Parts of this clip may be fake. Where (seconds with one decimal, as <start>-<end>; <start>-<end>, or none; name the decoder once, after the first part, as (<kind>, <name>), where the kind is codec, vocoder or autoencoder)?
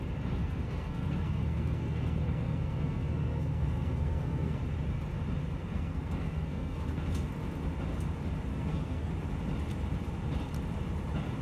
0.4-4.6 (codec, SNAC); 5.6-7.3; 8.5-9.1